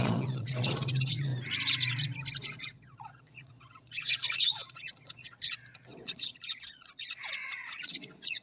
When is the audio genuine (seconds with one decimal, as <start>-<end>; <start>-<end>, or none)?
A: 1.3-2.4